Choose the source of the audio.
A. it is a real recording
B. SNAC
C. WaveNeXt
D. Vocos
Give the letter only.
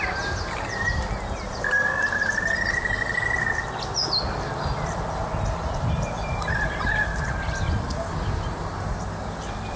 A